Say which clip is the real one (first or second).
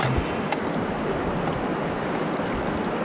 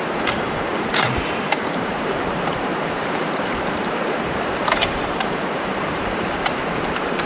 first